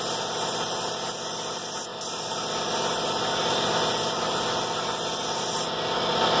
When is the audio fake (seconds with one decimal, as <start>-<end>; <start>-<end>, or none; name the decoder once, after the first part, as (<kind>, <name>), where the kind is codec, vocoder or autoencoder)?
none